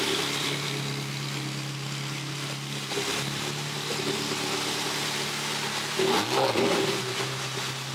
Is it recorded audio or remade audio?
recorded